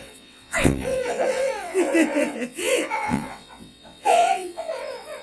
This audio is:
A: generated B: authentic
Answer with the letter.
A